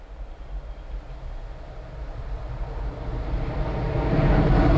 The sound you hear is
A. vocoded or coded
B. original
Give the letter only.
B